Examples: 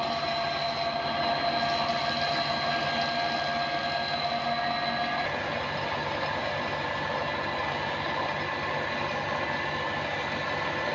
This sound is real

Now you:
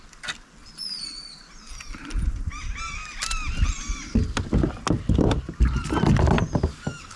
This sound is real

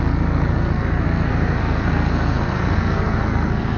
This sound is fake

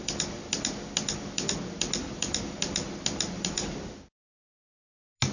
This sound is real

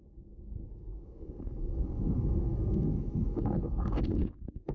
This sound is fake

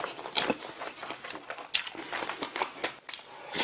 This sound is real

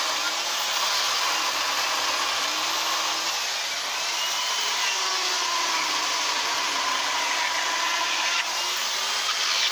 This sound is real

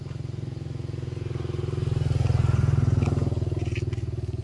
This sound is real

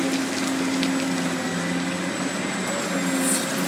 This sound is real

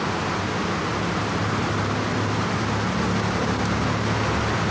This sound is real